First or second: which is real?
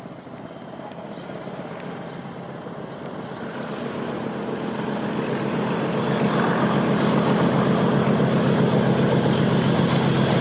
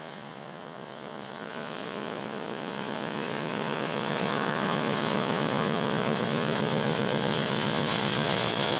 first